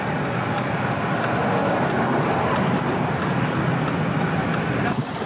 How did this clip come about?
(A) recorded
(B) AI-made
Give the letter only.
A